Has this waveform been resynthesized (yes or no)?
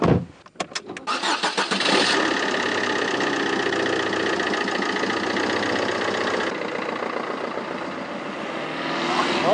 no